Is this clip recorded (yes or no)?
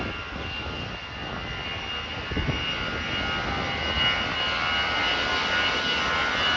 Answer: yes